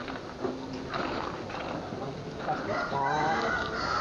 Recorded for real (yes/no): yes